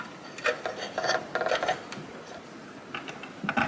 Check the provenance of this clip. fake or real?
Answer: real